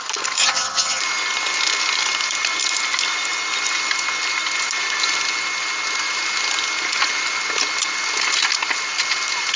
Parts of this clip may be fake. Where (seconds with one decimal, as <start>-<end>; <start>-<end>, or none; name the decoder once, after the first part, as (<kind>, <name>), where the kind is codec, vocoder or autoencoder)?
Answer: 0.4-1.0 (vocoder, HiFi-GAN)